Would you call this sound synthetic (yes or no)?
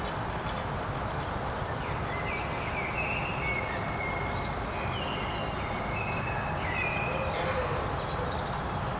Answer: no